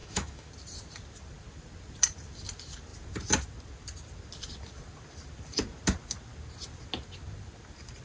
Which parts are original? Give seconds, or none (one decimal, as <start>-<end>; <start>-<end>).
0.5-8.0